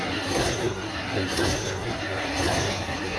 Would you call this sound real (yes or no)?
no